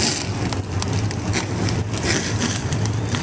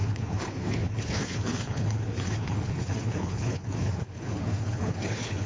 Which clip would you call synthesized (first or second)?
second